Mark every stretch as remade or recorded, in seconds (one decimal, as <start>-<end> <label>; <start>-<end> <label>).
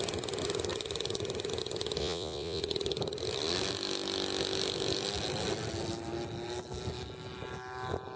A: 0.0-2.0 recorded; 2.0-2.6 remade; 2.6-8.2 recorded